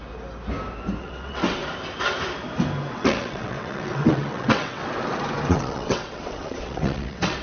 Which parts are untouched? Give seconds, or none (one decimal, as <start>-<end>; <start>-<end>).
0.0-1.0; 1.6-2.9; 4.8-5.5